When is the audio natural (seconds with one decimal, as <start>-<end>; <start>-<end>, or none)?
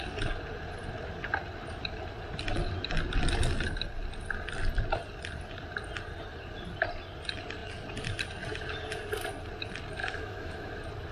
0.0-10.0; 10.7-11.1